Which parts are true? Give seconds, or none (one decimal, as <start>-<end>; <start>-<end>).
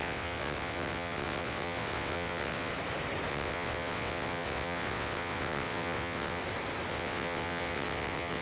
2.7-3.3; 6.4-6.9